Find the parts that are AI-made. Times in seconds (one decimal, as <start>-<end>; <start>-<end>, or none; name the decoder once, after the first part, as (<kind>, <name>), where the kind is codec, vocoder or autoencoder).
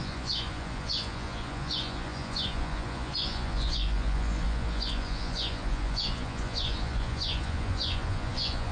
0.0-8.7 (vocoder, Vocos)